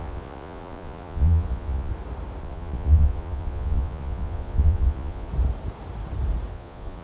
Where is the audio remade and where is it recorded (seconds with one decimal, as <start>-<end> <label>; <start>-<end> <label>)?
0.0-1.9 remade; 1.9-2.4 recorded; 2.4-5.3 remade; 5.3-6.5 recorded; 6.5-7.0 remade